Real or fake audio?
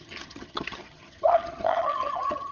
fake